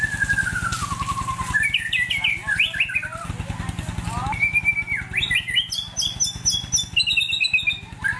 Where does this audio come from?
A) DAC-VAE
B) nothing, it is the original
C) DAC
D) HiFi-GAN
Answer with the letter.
B